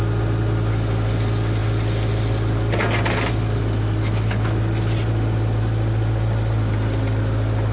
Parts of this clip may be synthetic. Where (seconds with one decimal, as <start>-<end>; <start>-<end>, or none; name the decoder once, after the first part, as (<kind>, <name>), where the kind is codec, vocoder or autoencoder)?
none